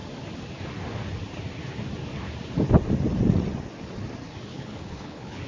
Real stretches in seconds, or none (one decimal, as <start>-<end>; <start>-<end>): 0.0-4.5